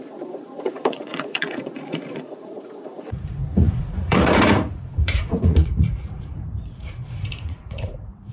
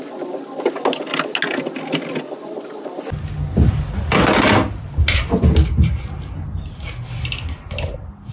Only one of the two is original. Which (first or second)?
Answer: second